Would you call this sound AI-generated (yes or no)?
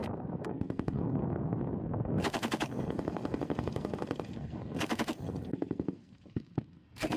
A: yes